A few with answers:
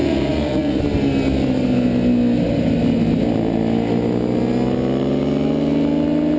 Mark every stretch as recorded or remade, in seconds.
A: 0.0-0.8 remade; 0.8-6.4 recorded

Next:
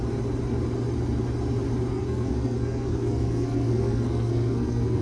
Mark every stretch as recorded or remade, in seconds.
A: 0.0-1.9 recorded; 1.9-5.0 remade

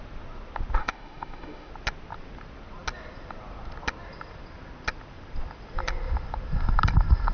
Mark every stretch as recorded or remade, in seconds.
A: 0.0-0.8 recorded; 0.8-1.7 remade; 1.7-7.3 recorded

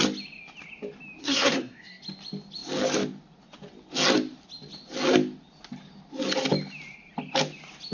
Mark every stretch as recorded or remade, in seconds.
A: 0.0-1.2 recorded; 1.2-2.0 remade; 2.0-7.9 recorded

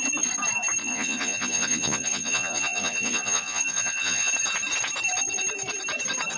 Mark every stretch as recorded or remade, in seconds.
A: 0.0-0.8 recorded; 0.8-4.3 remade; 4.3-6.4 recorded

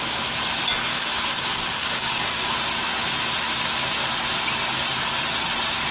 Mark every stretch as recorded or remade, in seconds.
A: 0.0-0.9 recorded; 0.9-2.5 remade; 2.5-5.9 recorded

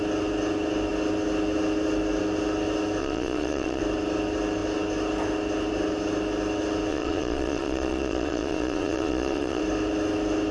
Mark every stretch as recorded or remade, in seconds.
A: 0.0-3.0 recorded; 3.0-3.8 remade; 3.8-6.9 recorded; 6.9-9.6 remade; 9.6-10.5 recorded

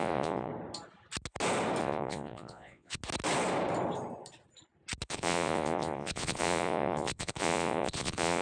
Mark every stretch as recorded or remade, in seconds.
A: 0.0-0.5 remade; 0.5-1.8 recorded; 1.8-3.0 remade; 3.0-5.1 recorded; 5.1-8.4 remade